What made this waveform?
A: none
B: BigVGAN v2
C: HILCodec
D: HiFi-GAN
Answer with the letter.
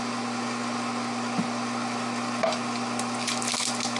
A